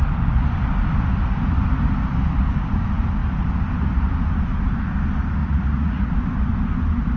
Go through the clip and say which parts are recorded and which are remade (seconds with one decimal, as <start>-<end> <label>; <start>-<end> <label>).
0.0-5.4 recorded; 5.4-6.1 remade; 6.1-7.2 recorded